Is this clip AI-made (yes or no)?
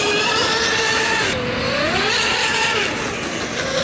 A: no